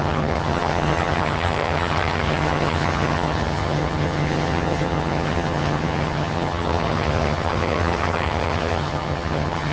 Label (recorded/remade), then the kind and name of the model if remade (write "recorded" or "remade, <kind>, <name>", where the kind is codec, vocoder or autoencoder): remade, vocoder, HiFi-GAN